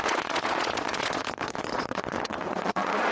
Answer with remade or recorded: remade